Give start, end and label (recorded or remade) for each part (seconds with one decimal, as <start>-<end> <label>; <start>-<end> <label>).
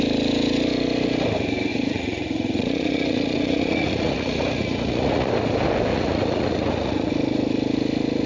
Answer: 0.0-1.7 recorded; 1.7-5.3 remade; 5.3-5.9 recorded; 5.9-7.1 remade; 7.1-8.3 recorded